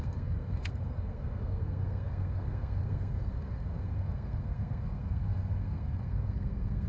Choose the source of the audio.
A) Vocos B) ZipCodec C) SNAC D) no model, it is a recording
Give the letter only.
C